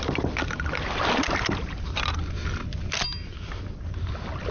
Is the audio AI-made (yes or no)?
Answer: no